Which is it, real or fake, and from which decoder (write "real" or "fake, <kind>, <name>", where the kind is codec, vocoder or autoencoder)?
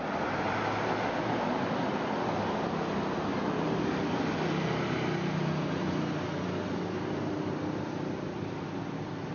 real